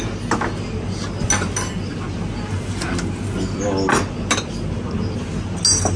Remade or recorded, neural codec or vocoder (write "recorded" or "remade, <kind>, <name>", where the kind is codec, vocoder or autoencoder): recorded